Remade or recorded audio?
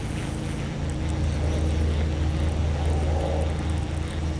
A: recorded